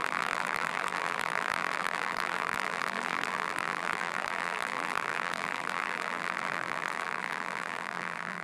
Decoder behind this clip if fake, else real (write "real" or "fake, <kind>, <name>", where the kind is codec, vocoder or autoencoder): fake, vocoder, BigVGAN v2